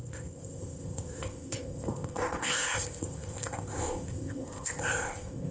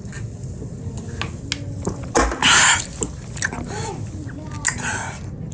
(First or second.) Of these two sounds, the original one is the second